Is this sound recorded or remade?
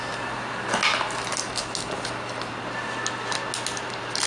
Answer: recorded